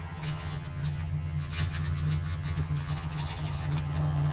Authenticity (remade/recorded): remade